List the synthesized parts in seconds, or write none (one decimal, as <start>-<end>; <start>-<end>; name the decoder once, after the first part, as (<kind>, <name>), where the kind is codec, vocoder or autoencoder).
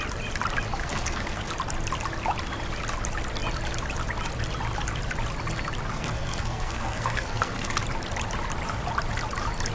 0.8-1.5 (codec, SNAC); 5.9-7.8